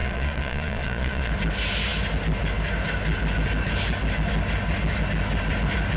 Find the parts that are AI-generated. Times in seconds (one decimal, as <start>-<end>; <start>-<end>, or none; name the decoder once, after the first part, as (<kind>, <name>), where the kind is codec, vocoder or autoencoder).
0.0-1.3 (vocoder, Vocos)